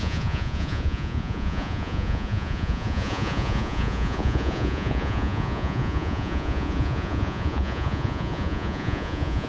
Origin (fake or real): fake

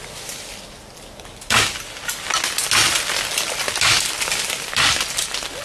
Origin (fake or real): real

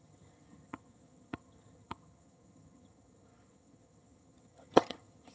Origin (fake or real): fake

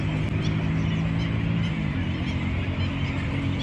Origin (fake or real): real